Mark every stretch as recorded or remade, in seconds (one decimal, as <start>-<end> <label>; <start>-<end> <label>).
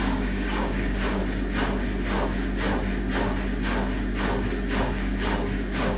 0.0-1.2 remade; 1.2-4.8 recorded; 4.8-6.0 remade